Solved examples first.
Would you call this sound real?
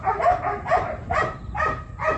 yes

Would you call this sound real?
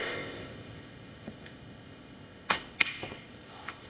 no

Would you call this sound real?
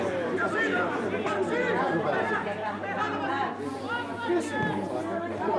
yes